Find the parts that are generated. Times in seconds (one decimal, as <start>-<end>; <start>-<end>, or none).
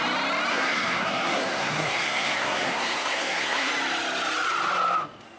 0.5-3.7